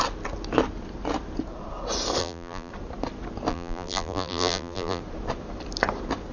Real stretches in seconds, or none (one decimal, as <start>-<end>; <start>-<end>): 0.0-2.2; 2.7-3.5; 5.0-6.3